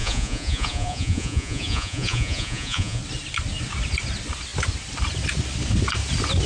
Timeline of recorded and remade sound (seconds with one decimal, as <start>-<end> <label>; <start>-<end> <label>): 0.0-3.0 remade; 3.0-6.5 recorded